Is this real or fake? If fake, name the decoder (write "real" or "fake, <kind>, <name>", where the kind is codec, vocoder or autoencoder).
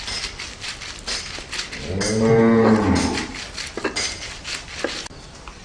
real